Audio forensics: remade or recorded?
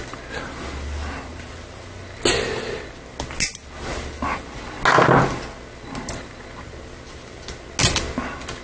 recorded